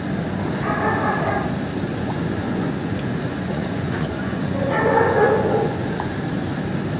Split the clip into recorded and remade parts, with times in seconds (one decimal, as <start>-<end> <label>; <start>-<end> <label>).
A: 0.0-1.9 recorded; 1.9-6.1 remade; 6.1-7.0 recorded